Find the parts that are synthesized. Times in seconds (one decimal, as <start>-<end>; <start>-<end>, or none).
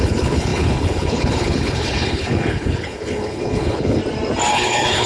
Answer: 0.0-4.0; 4.5-5.1